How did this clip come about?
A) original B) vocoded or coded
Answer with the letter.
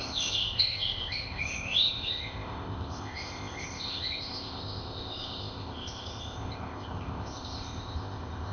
B